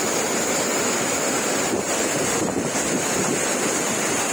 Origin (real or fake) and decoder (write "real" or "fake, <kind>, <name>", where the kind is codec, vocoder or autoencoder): real